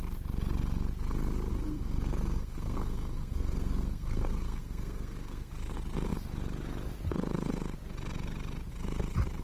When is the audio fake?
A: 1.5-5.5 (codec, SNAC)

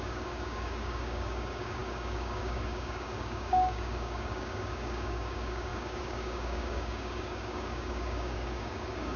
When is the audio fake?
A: 0.0-9.2 (codec, DAC)

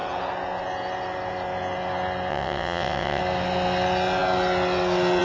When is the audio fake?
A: 2.3-3.2 (vocoder, WaveNeXt)

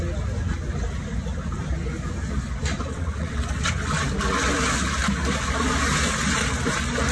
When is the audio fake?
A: 2.9-3.7 (vocoder, WaveNeXt)